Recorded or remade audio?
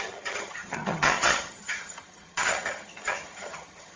remade